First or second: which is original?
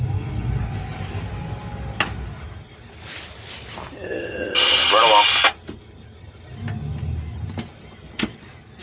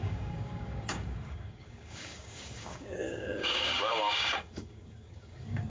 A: first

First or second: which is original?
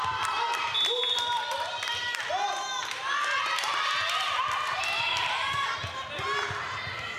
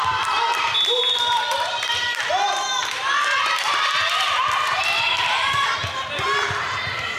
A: first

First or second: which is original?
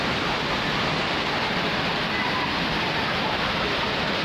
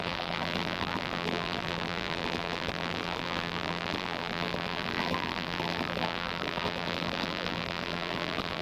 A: first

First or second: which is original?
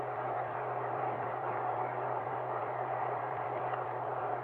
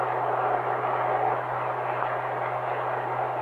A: second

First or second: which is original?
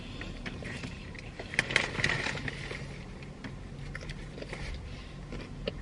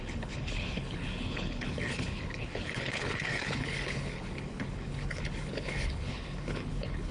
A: first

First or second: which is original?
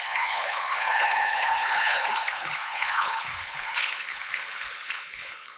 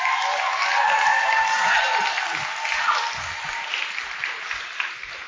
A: second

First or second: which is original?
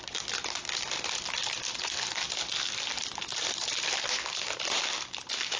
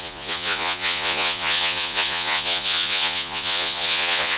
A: first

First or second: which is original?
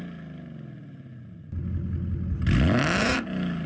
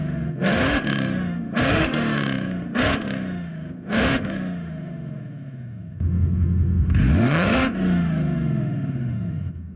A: first